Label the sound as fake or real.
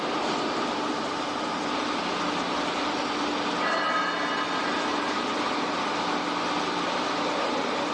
real